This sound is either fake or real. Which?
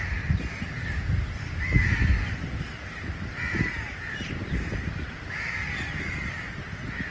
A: real